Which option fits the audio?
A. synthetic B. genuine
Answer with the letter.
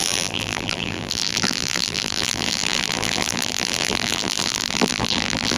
A